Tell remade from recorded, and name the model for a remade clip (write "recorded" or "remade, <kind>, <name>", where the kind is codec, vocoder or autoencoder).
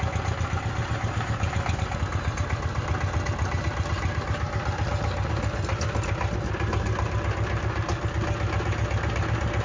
recorded